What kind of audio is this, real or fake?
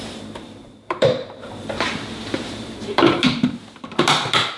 fake